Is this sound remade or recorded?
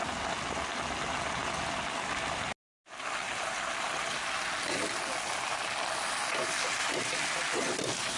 recorded